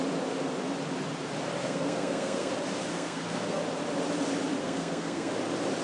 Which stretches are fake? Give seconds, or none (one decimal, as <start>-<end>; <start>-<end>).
1.6-2.5; 2.9-3.6; 4.6-5.3